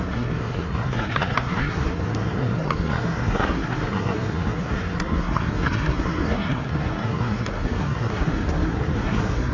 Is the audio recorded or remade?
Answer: remade